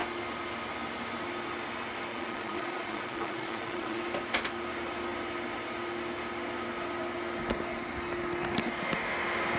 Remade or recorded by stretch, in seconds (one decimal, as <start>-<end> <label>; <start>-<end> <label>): 0.0-2.1 recorded; 2.1-4.0 remade; 4.0-9.6 recorded